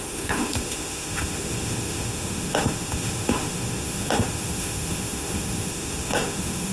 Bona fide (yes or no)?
no